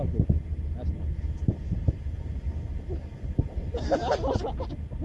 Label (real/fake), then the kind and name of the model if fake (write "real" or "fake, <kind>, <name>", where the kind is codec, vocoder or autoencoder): real